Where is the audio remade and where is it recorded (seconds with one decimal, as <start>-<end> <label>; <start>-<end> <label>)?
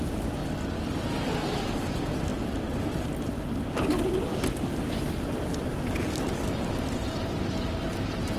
0.0-0.4 remade; 0.4-1.1 recorded; 1.1-2.3 remade; 2.3-6.0 recorded; 6.0-8.4 remade